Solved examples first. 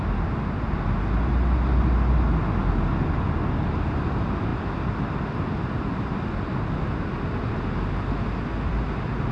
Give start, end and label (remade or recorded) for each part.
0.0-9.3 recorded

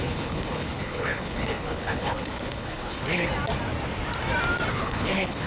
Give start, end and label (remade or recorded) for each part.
0.0-3.3 remade; 3.3-4.7 recorded; 4.7-5.5 remade